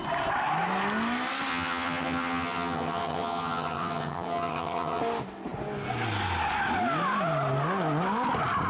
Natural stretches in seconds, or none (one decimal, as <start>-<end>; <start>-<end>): 0.0-1.5; 5.0-8.7